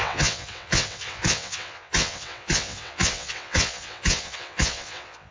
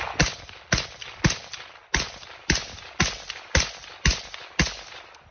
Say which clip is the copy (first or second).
first